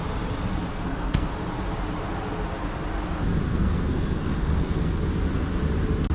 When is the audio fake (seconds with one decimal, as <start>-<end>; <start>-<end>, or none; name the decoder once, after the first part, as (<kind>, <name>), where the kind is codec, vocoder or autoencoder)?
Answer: 0.7-1.3 (codec, SNAC); 3.5-5.1